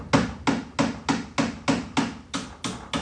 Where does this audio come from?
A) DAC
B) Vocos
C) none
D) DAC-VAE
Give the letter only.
C